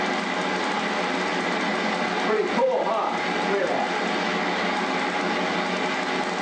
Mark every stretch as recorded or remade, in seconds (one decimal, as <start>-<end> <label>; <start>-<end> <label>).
0.0-6.4 recorded